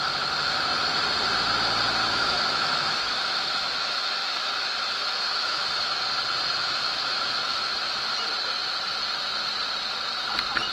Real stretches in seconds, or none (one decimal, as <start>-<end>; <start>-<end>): 0.0-2.0; 6.0-6.6; 8.1-10.7